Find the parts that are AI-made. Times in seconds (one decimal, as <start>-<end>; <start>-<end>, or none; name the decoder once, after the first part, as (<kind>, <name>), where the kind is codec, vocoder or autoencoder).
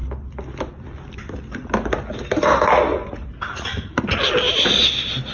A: 2.9-4.0 (vocoder, Vocos)